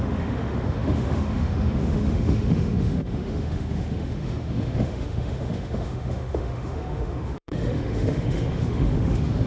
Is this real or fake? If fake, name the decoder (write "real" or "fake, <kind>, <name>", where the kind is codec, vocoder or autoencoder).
fake, autoencoder, DAC-VAE